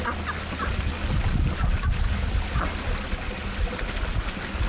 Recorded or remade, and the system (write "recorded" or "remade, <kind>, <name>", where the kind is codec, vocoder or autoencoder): recorded